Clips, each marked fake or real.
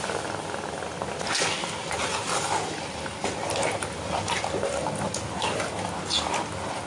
real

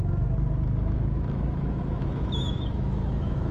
fake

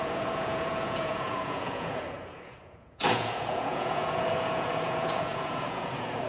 fake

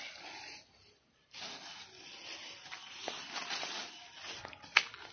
real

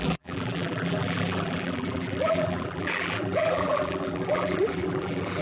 fake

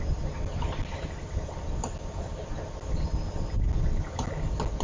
real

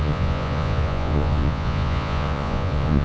fake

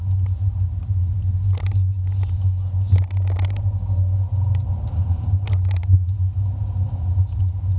real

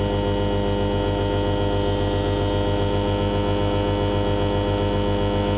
real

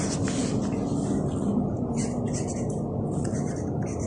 real